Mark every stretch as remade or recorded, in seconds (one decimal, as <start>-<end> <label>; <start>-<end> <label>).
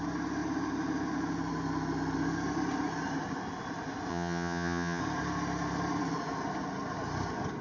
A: 0.0-4.1 recorded; 4.1-5.0 remade; 5.0-7.6 recorded